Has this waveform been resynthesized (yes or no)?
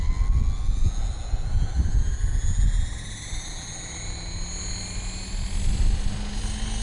no